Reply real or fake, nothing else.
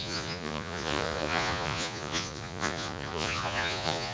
fake